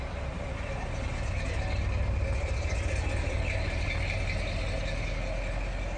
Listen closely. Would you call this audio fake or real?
real